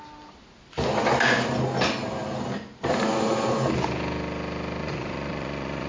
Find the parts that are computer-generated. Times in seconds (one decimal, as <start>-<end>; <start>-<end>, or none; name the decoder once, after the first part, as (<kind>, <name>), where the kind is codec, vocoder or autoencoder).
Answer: 4.8-5.9 (vocoder, Vocos)